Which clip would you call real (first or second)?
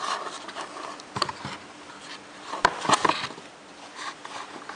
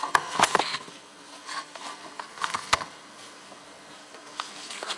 first